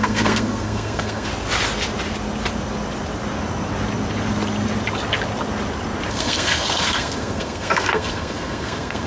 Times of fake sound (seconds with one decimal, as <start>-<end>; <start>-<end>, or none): 0.0-1.3; 6.1-9.1